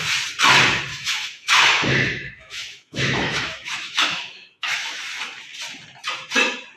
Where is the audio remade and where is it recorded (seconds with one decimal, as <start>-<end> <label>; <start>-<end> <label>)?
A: 0.0-0.9 recorded; 0.9-5.0 remade; 5.0-6.8 recorded